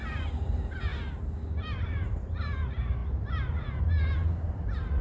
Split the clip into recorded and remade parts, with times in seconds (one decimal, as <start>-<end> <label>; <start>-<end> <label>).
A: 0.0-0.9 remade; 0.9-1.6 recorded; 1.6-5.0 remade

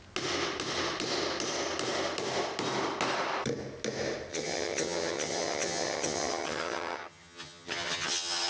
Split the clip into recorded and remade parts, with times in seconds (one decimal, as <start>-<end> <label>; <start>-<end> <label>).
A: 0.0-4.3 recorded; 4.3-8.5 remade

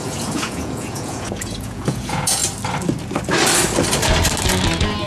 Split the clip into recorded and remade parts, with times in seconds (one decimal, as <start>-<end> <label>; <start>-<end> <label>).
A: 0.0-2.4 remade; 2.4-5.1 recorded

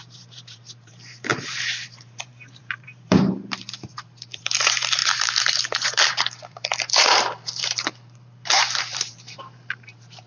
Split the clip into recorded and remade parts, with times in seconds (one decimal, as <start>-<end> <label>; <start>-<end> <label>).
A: 0.0-10.3 remade

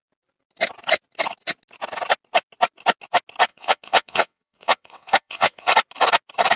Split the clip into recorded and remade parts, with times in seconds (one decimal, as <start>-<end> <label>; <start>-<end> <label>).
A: 0.0-3.5 recorded; 3.5-5.7 remade; 5.7-6.6 recorded

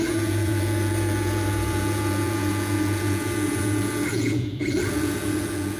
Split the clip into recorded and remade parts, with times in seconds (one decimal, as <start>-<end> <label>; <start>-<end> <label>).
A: 0.0-5.8 remade